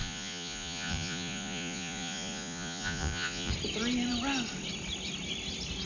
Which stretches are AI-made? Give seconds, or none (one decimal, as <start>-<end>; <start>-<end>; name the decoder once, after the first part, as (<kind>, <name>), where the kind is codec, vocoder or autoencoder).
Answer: 0.0-3.5 (vocoder, Vocos)